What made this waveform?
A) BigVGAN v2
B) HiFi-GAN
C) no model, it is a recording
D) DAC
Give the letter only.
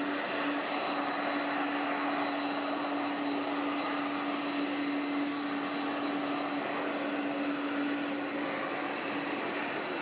C